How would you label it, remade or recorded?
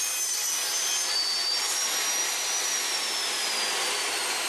recorded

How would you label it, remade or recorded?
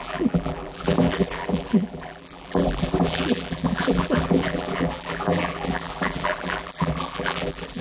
remade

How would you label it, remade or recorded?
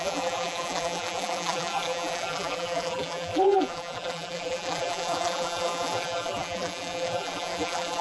remade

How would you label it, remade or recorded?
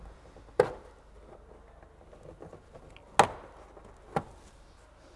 recorded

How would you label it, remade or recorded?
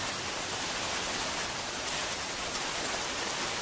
recorded